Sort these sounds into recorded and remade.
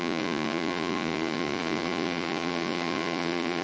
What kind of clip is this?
remade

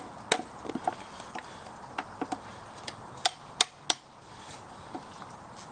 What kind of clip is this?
recorded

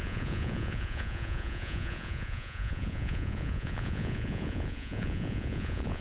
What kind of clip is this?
remade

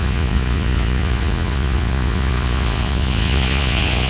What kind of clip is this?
remade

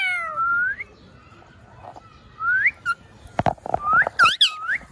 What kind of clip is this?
recorded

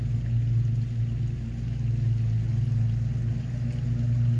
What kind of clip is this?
recorded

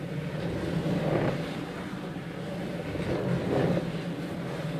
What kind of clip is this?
recorded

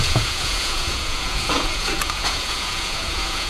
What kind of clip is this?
remade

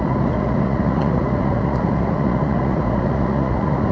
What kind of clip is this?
remade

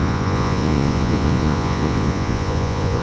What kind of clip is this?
remade